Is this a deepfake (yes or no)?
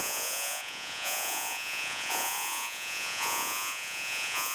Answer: yes